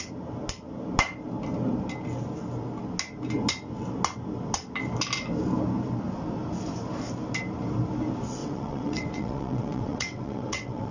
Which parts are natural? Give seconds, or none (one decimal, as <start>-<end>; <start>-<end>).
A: 0.0-8.4